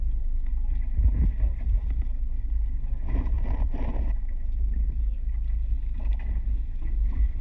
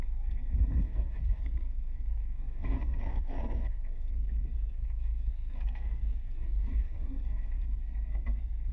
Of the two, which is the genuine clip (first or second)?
first